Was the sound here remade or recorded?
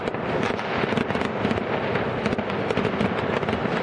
recorded